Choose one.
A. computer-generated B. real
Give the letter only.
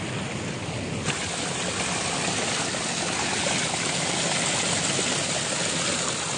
B